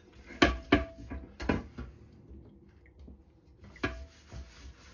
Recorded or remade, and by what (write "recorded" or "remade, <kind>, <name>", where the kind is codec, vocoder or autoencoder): recorded